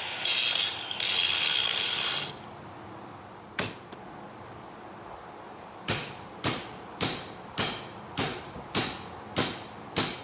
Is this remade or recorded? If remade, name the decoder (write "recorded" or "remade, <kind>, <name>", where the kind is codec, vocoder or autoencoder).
recorded